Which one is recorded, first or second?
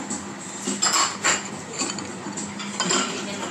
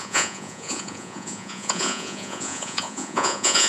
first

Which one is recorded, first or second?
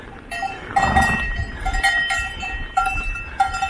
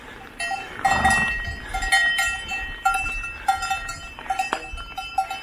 second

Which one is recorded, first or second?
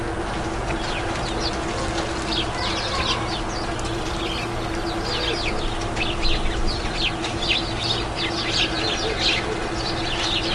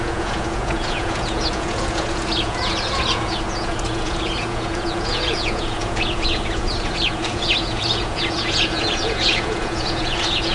first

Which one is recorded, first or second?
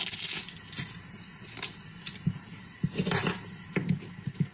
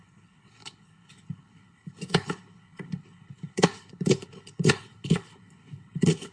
first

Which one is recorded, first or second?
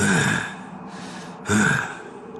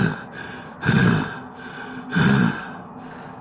second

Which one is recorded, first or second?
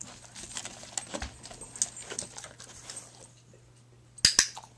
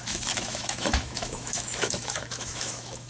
first